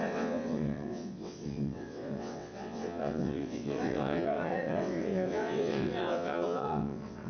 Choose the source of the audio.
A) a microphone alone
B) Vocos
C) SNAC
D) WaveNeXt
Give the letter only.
D